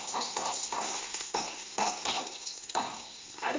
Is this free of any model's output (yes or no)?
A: no